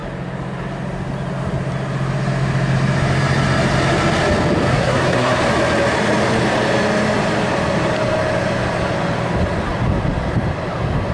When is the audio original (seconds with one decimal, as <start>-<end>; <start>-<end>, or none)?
0.0-4.7; 5.4-11.1